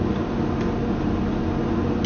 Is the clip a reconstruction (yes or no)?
no